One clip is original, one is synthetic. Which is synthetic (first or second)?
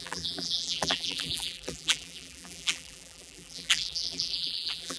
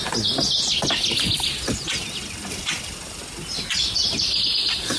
first